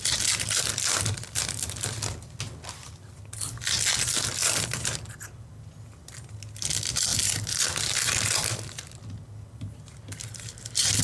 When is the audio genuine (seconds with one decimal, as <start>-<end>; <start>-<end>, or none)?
0.0-11.0